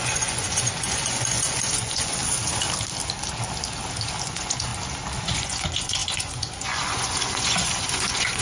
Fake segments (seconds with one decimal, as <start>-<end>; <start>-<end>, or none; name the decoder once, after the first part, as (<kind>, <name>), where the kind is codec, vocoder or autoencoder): 0.0-2.2 (vocoder, Vocos); 4.2-4.7; 5.2-8.4